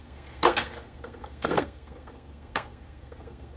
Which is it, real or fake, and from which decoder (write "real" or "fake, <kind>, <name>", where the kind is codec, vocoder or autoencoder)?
fake, codec, SNAC